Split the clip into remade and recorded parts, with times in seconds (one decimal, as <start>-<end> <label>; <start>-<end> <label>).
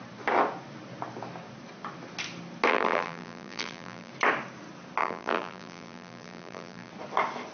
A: 0.0-2.7 recorded; 2.7-4.1 remade; 4.1-5.0 recorded; 5.0-6.9 remade; 6.9-7.5 recorded